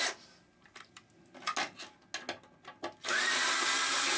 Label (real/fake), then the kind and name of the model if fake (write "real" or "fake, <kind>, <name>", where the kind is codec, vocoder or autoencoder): real